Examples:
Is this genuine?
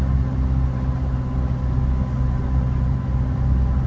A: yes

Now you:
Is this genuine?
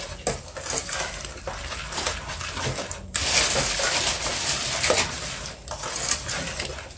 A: yes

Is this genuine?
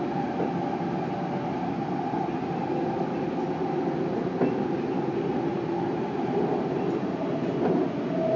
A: yes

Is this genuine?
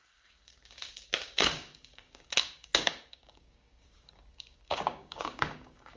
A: no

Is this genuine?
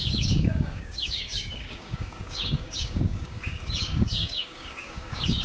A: no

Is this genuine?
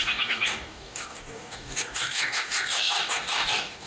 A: no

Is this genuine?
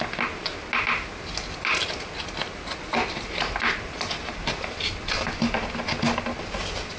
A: yes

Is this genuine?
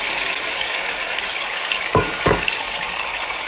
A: no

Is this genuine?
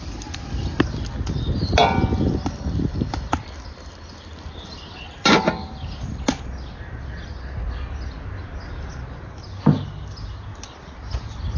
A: yes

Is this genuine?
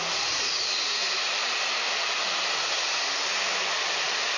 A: yes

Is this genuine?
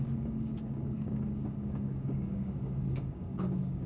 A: no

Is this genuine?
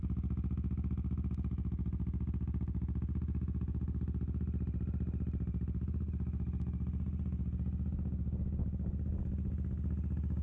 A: yes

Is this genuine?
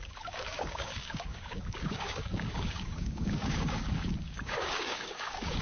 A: no